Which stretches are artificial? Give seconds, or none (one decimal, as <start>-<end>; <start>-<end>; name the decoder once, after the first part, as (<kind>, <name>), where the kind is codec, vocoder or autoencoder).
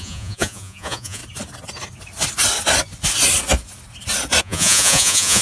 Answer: 0.0-1.2 (vocoder, Vocos); 4.4-5.4